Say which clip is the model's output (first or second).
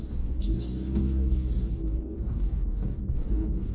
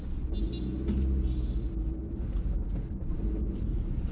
first